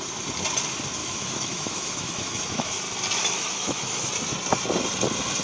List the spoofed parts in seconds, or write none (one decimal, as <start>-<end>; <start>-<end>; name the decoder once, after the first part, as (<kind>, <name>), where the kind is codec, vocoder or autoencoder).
1.0-2.8 (autoencoder, DAC-VAE); 3.2-4.1